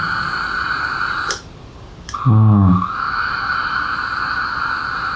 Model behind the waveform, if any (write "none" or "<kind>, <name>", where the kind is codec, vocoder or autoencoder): none